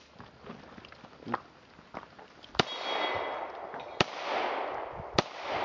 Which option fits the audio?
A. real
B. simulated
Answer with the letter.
A